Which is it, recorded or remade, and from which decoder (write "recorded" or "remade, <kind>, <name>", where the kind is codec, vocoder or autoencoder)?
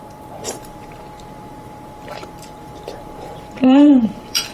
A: remade, vocoder, BigVGAN v2